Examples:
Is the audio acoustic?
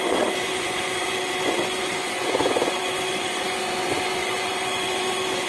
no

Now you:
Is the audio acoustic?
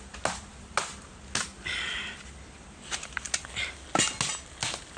yes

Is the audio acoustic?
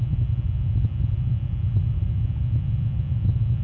yes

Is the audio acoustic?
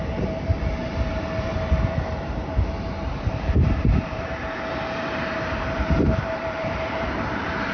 no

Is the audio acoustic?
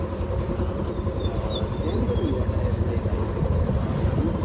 yes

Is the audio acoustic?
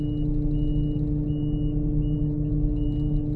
yes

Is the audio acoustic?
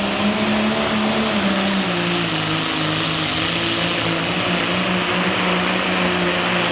yes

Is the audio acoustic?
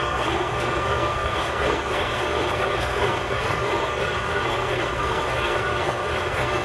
no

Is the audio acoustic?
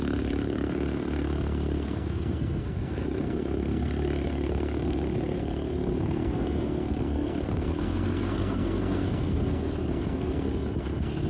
no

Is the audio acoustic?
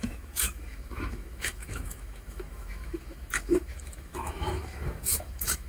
no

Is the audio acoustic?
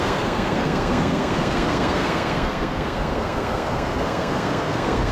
no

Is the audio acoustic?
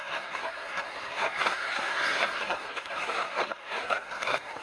no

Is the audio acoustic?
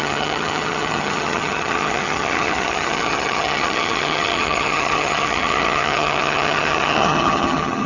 no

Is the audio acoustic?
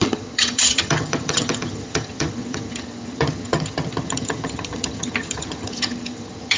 no